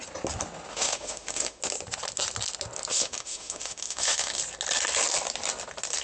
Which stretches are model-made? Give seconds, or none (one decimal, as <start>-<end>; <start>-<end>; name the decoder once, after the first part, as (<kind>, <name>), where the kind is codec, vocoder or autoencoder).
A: 0.7-1.6 (autoencoder, DAC-VAE); 2.9-4.4

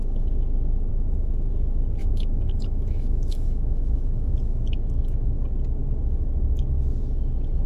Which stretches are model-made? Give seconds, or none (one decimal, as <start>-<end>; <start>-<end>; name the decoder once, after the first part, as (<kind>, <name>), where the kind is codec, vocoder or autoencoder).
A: 2.0-4.3 (autoencoder, DAC-VAE)